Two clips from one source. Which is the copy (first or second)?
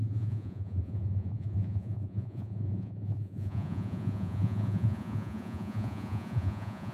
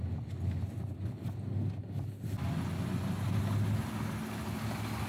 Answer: first